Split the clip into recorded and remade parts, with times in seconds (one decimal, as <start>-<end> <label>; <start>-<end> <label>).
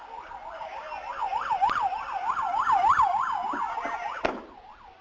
0.0-5.0 recorded